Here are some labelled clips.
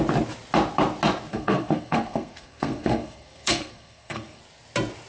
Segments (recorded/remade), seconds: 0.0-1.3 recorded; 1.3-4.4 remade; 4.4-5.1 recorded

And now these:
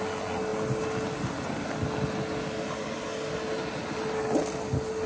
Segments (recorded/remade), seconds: 0.0-5.1 recorded

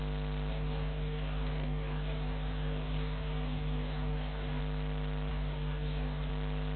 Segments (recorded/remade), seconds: 0.0-0.5 recorded; 0.5-4.6 remade; 4.6-5.3 recorded; 5.3-6.3 remade; 6.3-6.8 recorded

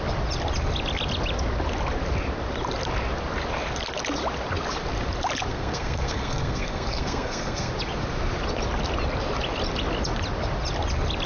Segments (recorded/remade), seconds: 0.0-5.5 recorded; 5.5-7.7 remade; 7.7-11.3 recorded